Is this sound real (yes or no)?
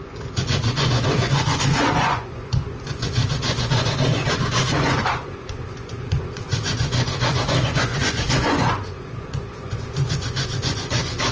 no